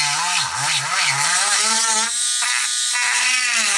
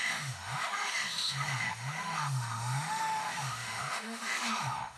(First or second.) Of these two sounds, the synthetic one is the second